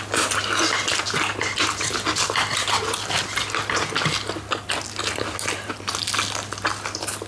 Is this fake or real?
real